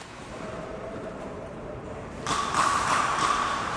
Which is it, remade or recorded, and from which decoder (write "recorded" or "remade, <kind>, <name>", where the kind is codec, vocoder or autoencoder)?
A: remade, vocoder, BigVGAN v2